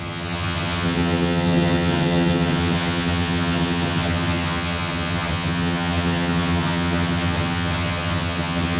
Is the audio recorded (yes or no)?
no